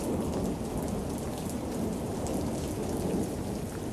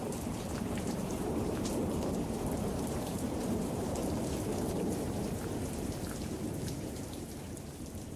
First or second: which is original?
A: first